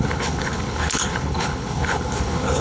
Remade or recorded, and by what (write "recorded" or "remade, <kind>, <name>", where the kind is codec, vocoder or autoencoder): remade, codec, HILCodec